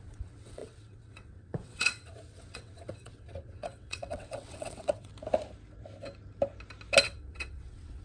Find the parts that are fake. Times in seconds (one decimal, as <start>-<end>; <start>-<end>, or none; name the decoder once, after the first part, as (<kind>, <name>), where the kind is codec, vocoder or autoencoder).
0.0-5.1 (vocoder, WaveNeXt); 7.0-8.0